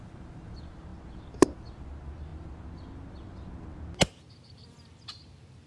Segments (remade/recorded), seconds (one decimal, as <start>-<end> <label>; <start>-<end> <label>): 0.0-5.7 recorded